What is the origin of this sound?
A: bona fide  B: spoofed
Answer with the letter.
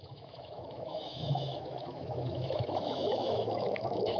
B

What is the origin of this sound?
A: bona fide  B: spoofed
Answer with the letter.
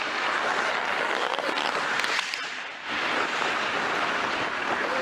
A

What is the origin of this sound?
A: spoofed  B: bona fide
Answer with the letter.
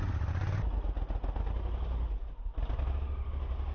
B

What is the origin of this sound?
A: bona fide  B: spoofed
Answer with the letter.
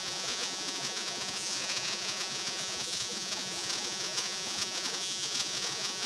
B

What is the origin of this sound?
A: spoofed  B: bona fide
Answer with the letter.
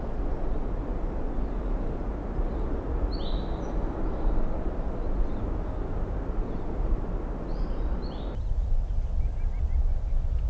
B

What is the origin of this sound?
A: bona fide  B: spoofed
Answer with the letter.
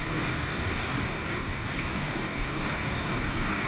B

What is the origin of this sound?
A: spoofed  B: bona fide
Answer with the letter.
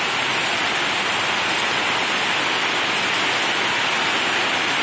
B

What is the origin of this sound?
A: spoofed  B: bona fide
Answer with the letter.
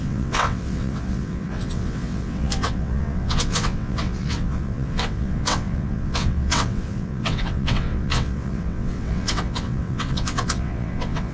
A